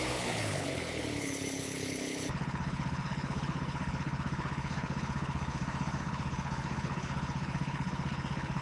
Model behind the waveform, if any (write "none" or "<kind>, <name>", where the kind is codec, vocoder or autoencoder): codec, HILCodec